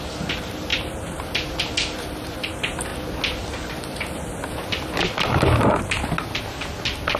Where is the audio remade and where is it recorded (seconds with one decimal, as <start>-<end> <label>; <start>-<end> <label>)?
0.0-0.7 recorded; 0.7-1.6 remade; 1.6-7.2 recorded